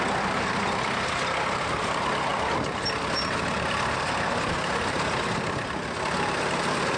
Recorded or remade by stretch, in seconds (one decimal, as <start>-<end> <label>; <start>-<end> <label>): 0.0-7.0 recorded